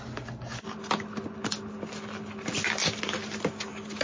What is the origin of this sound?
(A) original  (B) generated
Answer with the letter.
A